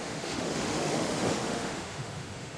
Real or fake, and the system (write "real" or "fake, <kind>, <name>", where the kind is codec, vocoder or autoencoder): fake, autoencoder, DAC-VAE